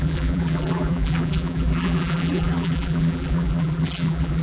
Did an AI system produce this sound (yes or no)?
yes